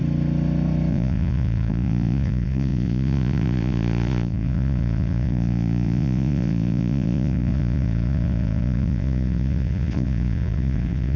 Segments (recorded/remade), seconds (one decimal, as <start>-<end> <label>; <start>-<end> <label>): 0.0-0.9 recorded; 0.9-11.2 remade